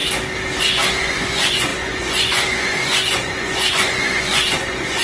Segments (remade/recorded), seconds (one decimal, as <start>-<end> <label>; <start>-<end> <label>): 0.0-0.6 recorded; 0.6-5.0 remade